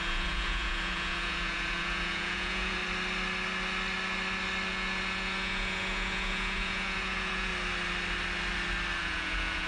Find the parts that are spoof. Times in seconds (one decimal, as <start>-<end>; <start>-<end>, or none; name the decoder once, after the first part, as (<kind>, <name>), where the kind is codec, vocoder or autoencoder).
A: 0.0-2.8 (vocoder, Vocos); 4.7-7.5; 9.0-9.7